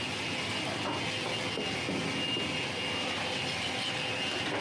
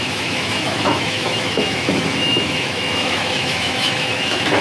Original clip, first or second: first